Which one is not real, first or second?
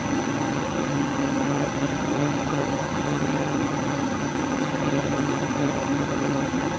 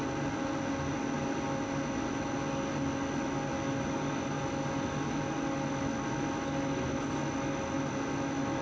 first